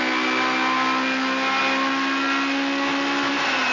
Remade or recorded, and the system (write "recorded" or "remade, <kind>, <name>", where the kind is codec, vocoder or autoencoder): recorded